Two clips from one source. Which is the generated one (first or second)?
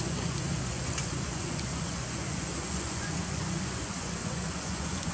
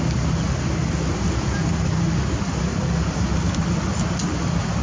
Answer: first